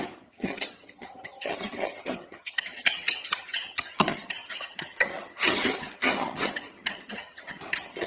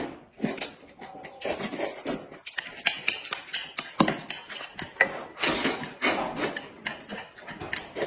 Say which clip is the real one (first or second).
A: second